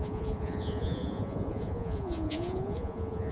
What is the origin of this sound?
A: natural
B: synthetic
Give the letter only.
B